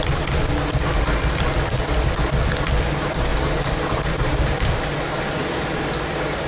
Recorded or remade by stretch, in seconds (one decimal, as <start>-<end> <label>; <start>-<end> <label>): 0.0-3.3 recorded; 3.3-4.7 remade; 4.7-6.5 recorded

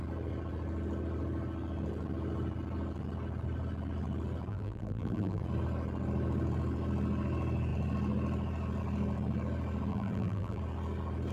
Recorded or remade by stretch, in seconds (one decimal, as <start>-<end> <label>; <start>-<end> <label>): 0.0-4.5 recorded; 4.5-5.4 remade; 5.4-9.9 recorded; 9.9-10.6 remade; 10.6-11.3 recorded

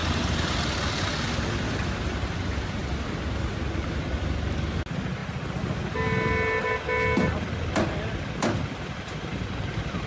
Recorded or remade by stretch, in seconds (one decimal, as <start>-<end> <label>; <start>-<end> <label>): 0.0-0.6 remade; 0.6-10.1 recorded